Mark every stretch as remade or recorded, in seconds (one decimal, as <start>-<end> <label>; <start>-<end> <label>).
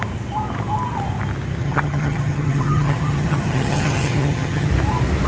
0.0-1.6 recorded; 1.6-4.7 remade; 4.7-5.3 recorded